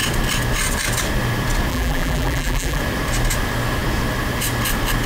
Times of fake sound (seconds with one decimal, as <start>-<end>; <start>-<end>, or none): 1.7-2.8